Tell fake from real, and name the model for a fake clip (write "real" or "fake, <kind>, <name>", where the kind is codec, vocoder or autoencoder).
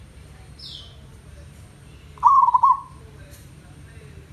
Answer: fake, vocoder, BigVGAN v2